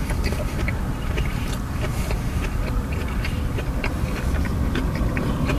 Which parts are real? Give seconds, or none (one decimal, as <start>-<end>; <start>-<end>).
none